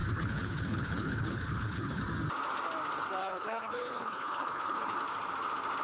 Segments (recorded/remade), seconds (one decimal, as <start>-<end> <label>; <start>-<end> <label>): 0.0-2.0 remade; 2.0-3.2 recorded; 3.2-5.0 remade; 5.0-5.8 recorded

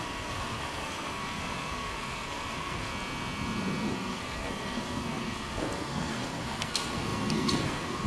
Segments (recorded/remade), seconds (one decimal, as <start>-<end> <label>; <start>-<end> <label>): 0.0-2.9 remade; 2.9-3.9 recorded; 3.9-8.1 remade

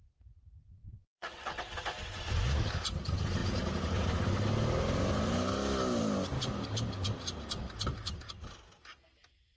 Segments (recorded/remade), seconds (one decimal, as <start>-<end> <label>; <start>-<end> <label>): 0.0-0.6 recorded; 0.6-1.6 remade; 1.6-9.6 recorded